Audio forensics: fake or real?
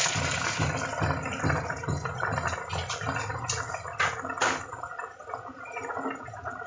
real